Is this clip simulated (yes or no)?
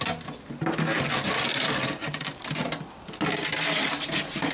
no